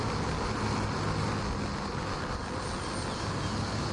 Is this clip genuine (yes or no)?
yes